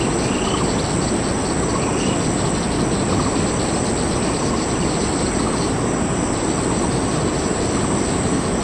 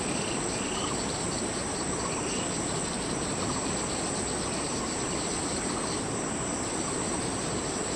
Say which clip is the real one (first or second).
first